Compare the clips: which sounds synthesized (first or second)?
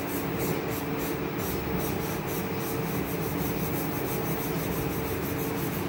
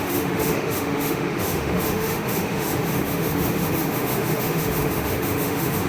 second